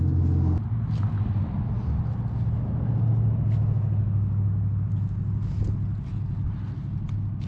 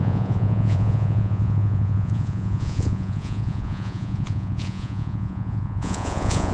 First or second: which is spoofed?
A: second